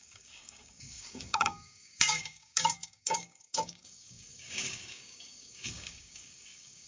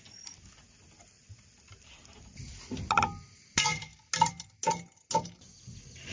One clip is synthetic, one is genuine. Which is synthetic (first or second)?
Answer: first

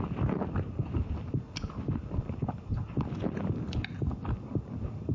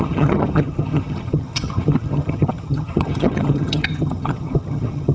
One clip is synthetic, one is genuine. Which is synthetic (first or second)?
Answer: second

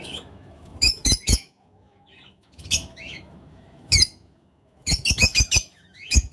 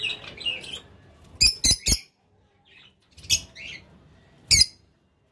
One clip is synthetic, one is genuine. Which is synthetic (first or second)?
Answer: first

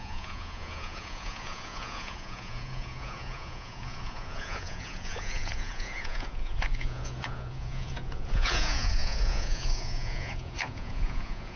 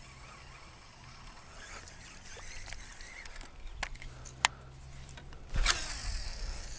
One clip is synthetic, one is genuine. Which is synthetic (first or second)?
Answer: first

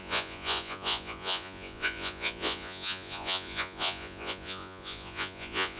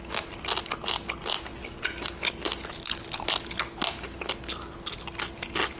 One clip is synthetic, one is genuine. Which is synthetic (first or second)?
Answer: first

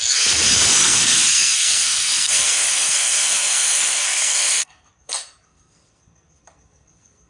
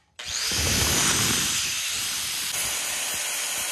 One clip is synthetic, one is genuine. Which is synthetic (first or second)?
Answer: first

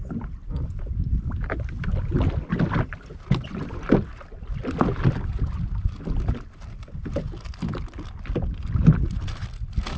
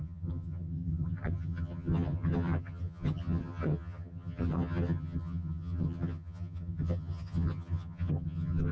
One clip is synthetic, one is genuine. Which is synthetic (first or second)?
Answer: second